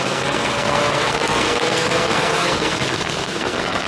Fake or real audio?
fake